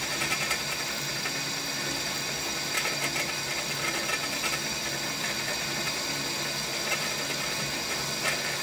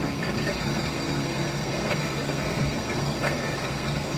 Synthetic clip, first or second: second